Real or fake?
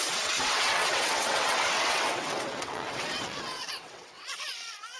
fake